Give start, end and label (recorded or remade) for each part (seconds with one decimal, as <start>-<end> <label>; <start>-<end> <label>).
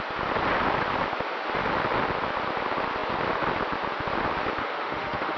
0.0-4.6 recorded; 4.6-5.4 remade